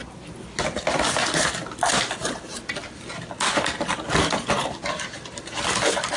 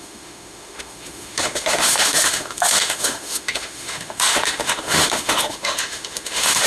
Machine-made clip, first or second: second